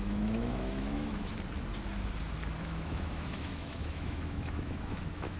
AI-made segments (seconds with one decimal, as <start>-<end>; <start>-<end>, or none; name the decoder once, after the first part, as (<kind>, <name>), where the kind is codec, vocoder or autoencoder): 0.0-1.3 (autoencoder, DAC-VAE); 2.6-5.4